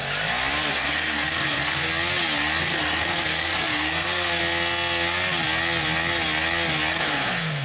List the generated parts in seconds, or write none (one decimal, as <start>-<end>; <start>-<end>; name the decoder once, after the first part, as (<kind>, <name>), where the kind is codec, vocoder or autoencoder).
0.7-1.9 (codec, SNAC); 2.6-4.4; 6.9-7.6